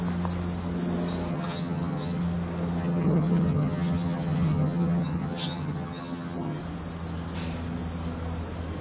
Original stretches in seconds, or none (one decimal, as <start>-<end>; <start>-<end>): 0.0-1.3; 2.2-2.8; 6.6-8.8